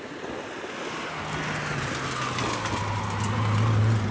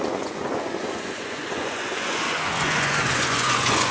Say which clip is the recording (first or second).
first